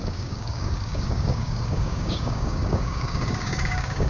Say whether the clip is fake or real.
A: fake